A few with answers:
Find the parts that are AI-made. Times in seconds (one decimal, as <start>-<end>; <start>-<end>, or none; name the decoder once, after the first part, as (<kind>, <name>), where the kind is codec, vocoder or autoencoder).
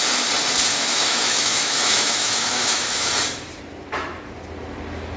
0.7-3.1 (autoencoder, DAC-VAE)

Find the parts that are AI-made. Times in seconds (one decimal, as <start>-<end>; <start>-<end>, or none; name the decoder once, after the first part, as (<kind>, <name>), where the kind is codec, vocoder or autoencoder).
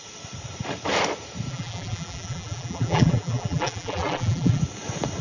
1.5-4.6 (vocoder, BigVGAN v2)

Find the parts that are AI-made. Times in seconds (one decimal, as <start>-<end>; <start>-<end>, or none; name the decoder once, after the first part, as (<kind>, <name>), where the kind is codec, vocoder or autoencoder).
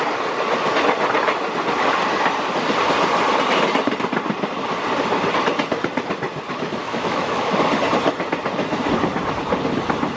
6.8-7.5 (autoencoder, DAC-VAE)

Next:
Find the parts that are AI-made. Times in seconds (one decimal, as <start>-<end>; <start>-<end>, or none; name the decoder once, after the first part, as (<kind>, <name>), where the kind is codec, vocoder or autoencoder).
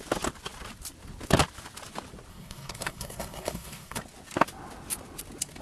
2.3-4.0 (codec, SNAC)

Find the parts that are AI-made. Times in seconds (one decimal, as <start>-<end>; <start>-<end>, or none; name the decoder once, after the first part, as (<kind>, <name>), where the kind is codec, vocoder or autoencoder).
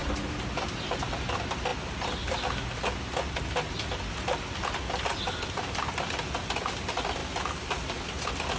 7.2-7.9 (vocoder, BigVGAN v2)